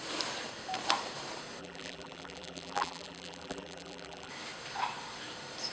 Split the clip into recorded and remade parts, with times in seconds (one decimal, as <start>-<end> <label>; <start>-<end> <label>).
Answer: 0.0-1.6 recorded; 1.6-4.3 remade; 4.3-5.7 recorded